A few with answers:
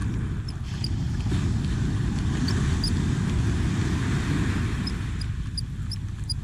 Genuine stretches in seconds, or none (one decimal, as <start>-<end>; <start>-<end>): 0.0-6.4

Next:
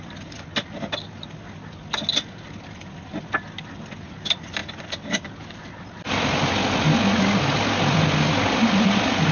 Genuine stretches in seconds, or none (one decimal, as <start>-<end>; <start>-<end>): 0.0-9.3

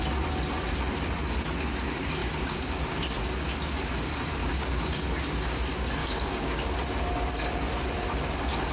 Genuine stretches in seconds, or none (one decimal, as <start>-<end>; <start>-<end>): 0.0-2.2; 3.0-4.4; 5.0-6.0; 6.6-8.7

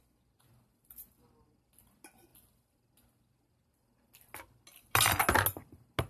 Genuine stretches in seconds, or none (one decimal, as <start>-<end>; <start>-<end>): 0.0-6.1

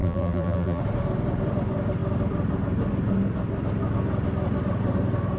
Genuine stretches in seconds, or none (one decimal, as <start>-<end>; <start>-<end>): 0.8-5.4

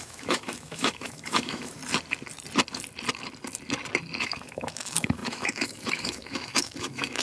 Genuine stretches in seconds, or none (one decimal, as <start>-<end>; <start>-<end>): 1.8-4.2

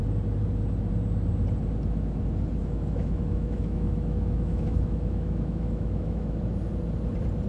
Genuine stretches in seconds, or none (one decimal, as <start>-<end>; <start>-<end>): 0.0-2.6; 6.4-7.5